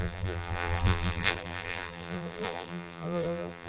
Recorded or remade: remade